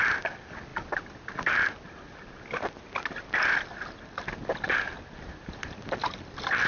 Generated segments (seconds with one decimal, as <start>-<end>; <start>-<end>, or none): none